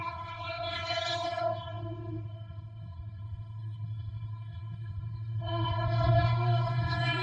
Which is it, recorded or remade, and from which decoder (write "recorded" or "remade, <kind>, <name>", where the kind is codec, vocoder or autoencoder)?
remade, codec, SNAC